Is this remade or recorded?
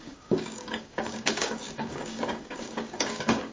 remade